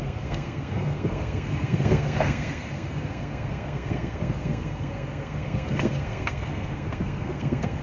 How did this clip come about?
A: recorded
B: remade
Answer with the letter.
B